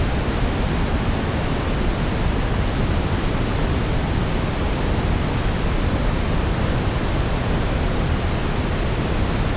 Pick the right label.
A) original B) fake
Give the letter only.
A